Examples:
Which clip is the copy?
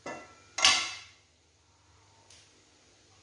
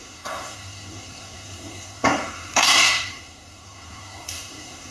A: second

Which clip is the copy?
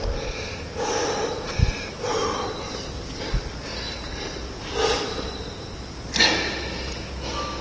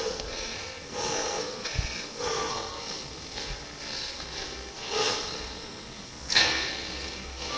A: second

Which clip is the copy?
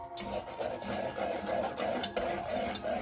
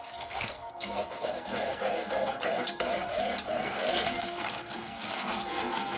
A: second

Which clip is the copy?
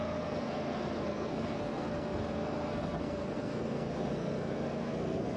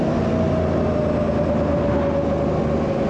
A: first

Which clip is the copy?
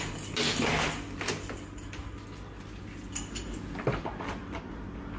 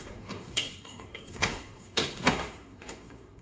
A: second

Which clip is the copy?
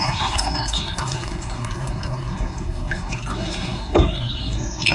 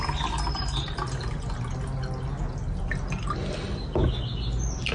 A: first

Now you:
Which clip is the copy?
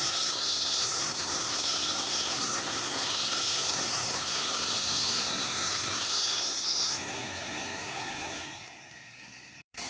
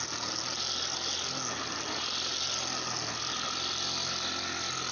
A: first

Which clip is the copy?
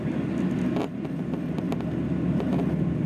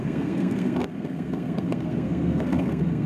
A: second